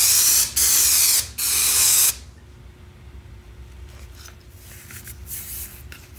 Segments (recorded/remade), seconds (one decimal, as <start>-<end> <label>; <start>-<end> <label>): 0.0-1.6 recorded; 1.6-2.1 remade; 2.1-6.2 recorded

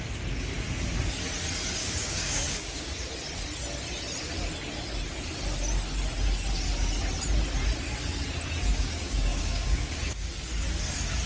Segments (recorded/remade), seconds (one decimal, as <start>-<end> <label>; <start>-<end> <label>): 0.0-1.8 recorded; 1.8-2.9 remade; 2.9-8.6 recorded; 8.6-10.3 remade; 10.3-11.3 recorded

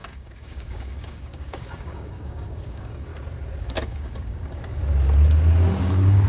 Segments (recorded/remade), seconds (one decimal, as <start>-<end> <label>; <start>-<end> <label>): 0.0-3.1 remade; 3.1-3.6 recorded; 3.6-4.8 remade; 4.8-5.8 recorded; 5.8-6.3 remade

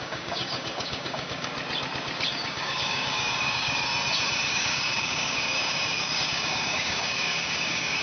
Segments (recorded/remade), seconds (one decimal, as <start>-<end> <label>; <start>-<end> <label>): 0.0-1.5 remade; 1.5-2.3 recorded; 2.3-3.9 remade; 3.9-4.5 recorded; 4.5-8.0 remade

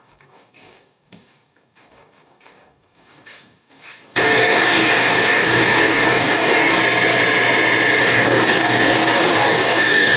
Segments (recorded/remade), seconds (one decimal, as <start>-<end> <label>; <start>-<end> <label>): 0.0-6.8 remade; 6.8-8.0 recorded; 8.0-10.2 remade

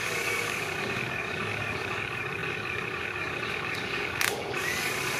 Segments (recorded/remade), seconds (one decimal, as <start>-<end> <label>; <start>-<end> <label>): 0.0-5.2 remade

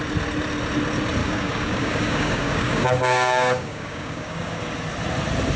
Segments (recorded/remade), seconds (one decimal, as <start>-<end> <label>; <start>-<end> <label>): 0.0-1.2 recorded; 1.2-4.6 remade; 4.6-5.6 recorded